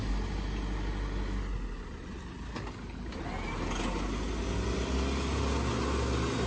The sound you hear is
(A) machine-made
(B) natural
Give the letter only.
B